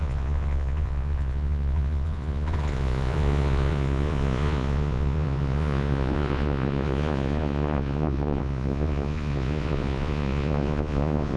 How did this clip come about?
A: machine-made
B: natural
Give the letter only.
A